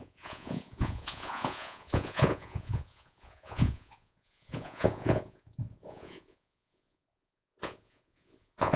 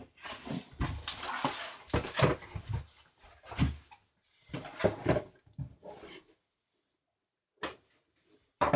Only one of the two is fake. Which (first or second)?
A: first